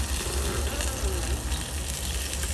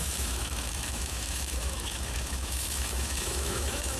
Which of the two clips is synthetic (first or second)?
second